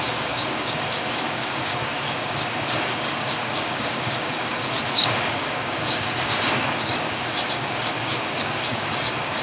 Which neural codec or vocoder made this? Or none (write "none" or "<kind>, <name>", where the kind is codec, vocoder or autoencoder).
codec, DAC